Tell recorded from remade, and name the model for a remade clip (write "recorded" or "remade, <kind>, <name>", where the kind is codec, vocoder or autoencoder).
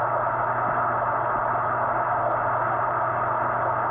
recorded